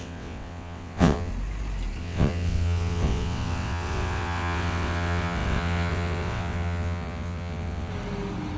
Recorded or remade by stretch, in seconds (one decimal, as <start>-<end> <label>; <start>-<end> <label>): 0.0-1.3 remade; 1.3-2.0 recorded; 2.0-7.9 remade; 7.9-8.6 recorded